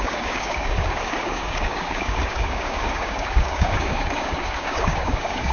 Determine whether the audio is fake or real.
fake